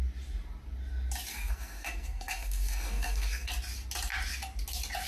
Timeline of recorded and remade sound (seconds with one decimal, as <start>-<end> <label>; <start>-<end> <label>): 0.0-1.3 recorded; 1.3-3.5 remade; 3.5-5.1 recorded